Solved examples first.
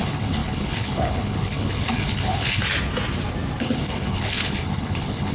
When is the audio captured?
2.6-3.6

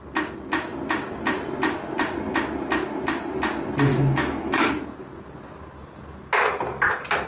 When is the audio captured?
0.0-3.9; 4.7-7.3